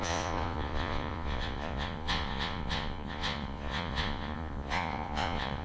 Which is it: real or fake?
fake